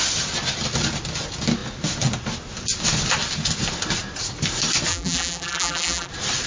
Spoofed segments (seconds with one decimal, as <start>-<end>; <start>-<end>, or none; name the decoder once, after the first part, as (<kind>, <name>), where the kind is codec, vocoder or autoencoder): 4.9-6.1 (vocoder, BigVGAN v2)